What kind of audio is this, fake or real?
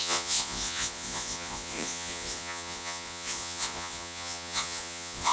fake